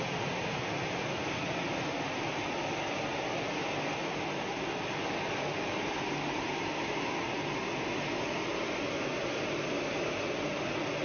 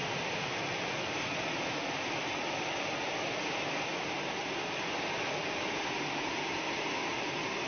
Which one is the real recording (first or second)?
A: first